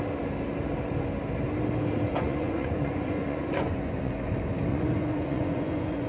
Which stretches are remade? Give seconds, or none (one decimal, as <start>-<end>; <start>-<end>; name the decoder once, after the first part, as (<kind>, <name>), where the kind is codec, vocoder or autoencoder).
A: 2.1-4.3 (vocoder, Vocos); 4.7-6.1